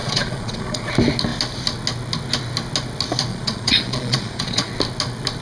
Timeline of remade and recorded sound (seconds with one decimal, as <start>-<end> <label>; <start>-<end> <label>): 0.0-0.9 remade; 0.9-3.3 recorded; 3.3-4.7 remade; 4.7-5.4 recorded